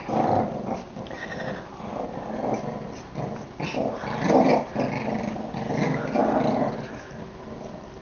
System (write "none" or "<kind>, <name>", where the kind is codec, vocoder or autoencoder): none